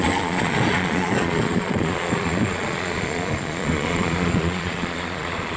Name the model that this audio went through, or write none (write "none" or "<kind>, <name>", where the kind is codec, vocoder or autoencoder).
vocoder, Vocos